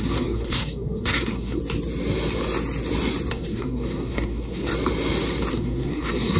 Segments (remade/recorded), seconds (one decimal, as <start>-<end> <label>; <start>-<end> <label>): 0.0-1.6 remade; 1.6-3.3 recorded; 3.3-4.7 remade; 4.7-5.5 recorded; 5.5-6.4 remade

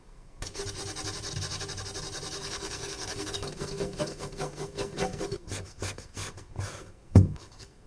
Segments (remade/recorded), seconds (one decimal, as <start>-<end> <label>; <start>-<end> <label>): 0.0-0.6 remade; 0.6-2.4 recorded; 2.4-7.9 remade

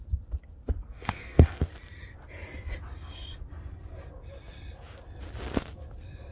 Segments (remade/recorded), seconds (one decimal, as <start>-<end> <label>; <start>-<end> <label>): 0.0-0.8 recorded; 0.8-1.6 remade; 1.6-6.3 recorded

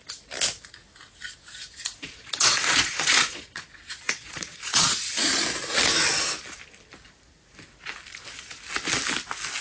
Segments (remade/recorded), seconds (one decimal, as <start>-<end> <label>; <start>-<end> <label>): 0.0-1.6 recorded; 1.6-5.3 remade; 5.3-9.6 recorded

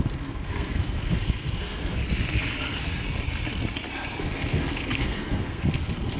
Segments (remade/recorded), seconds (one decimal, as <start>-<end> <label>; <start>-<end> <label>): 0.0-2.0 remade; 2.0-4.2 recorded; 4.2-6.2 remade

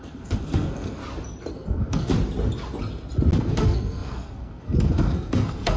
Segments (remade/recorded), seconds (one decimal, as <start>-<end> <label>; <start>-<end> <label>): 0.0-1.0 remade; 1.0-1.5 recorded; 1.5-2.1 remade; 2.1-3.4 recorded; 3.4-5.8 remade